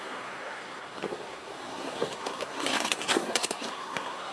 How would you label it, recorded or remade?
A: remade